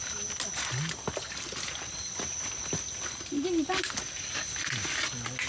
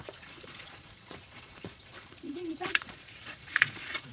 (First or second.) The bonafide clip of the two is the first